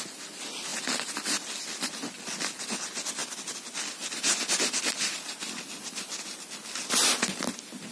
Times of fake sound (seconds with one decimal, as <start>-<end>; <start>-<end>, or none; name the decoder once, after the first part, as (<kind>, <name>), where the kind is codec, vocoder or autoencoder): none